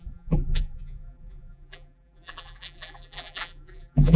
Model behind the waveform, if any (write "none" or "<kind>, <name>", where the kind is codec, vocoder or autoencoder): vocoder, BigVGAN v2